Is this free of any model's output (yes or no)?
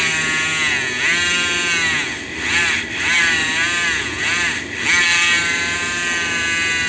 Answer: yes